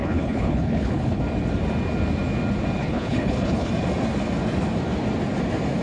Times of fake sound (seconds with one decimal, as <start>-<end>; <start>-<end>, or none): 0.0-1.2; 2.8-3.7